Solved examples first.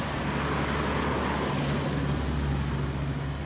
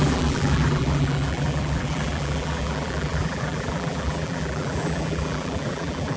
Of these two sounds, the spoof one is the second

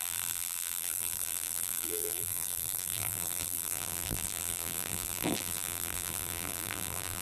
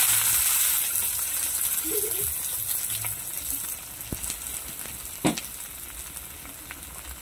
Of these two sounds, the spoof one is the first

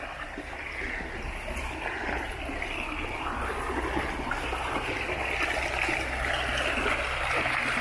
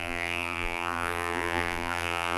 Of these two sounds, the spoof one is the second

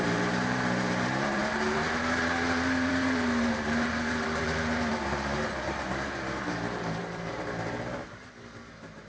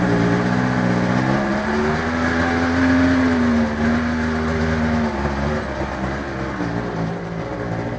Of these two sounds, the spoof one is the first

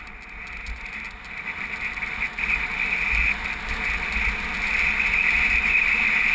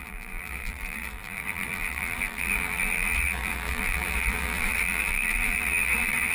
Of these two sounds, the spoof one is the second